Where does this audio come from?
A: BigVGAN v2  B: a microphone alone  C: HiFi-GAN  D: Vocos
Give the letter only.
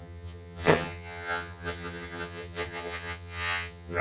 C